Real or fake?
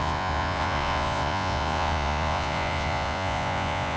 fake